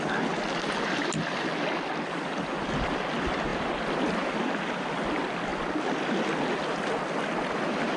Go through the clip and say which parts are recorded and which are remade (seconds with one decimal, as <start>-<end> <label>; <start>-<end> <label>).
0.0-8.0 recorded